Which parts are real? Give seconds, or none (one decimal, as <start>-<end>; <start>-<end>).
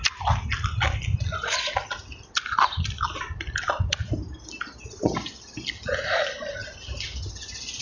0.0-7.8